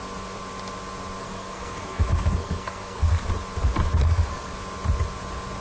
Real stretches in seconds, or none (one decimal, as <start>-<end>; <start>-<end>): 0.0-1.2; 3.3-4.0; 4.5-5.6

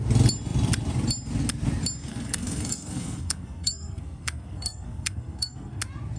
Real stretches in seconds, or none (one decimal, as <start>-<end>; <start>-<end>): 0.0-2.1; 5.8-6.2